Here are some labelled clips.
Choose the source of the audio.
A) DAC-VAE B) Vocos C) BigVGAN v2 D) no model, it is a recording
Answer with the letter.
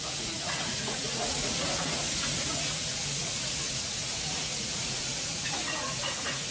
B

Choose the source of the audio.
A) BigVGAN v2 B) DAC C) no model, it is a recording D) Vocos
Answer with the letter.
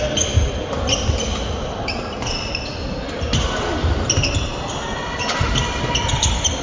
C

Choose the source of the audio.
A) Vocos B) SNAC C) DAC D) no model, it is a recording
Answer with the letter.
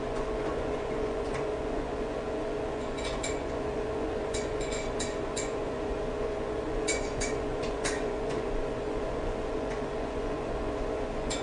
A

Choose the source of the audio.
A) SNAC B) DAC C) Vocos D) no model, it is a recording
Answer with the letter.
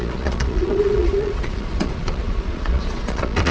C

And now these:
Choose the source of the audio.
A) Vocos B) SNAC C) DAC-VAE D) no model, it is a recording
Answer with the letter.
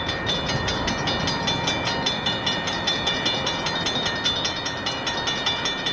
D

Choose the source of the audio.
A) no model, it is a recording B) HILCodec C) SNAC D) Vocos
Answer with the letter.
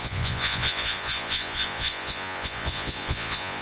D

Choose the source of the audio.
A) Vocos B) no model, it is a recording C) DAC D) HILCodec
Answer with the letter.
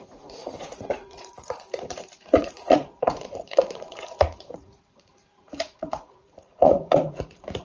A